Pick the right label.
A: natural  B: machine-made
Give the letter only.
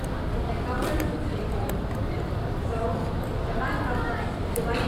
A